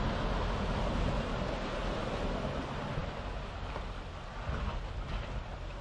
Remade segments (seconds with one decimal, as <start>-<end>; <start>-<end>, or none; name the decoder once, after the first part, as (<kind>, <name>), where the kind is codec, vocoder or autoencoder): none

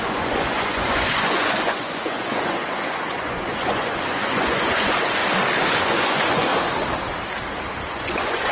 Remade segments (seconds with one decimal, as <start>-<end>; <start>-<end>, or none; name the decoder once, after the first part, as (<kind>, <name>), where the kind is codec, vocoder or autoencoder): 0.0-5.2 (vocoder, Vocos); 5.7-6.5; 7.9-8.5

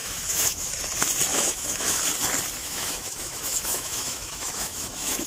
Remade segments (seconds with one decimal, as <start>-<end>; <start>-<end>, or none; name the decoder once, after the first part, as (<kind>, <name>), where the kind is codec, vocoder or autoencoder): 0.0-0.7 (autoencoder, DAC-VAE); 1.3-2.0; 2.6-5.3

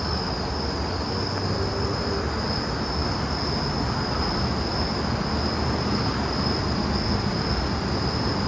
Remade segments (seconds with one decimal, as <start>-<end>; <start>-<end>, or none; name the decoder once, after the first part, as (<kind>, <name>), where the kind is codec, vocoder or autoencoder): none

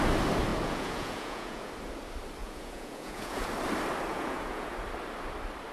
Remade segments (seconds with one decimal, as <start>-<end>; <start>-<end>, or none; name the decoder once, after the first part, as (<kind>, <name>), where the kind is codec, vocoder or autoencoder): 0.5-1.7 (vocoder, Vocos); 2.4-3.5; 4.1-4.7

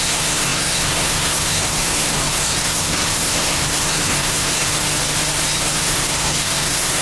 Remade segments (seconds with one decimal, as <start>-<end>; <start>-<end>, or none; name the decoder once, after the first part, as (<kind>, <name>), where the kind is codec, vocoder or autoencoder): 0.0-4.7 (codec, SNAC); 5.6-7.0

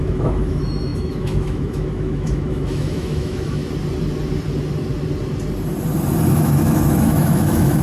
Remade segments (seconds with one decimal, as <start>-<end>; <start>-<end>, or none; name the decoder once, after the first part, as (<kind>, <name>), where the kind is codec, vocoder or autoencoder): 0.0-3.6 (autoencoder, DAC-VAE); 6.3-7.8

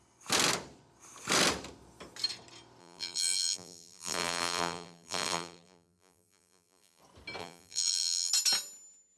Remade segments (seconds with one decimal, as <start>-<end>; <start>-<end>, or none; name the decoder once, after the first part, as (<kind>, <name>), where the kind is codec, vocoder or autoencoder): 2.8-7.0 (vocoder, BigVGAN v2); 7.4-8.3